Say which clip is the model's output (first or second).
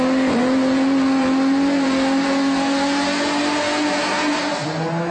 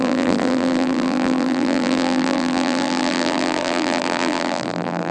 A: second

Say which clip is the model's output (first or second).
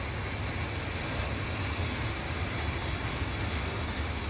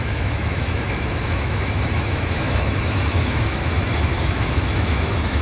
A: second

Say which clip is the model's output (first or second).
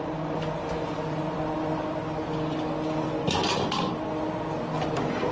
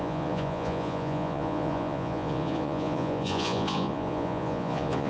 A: second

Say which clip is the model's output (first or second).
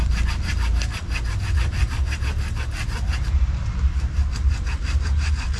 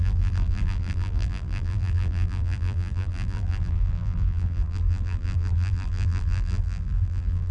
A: second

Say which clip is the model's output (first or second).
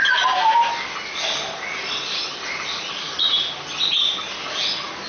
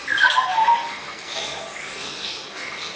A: second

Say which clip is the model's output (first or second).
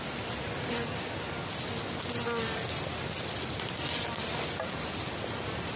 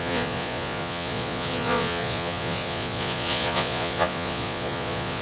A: second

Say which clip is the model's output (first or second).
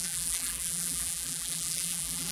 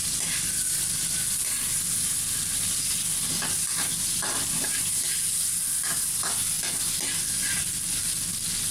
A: first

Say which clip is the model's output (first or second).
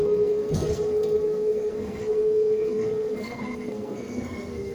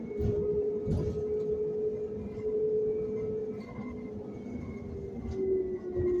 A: first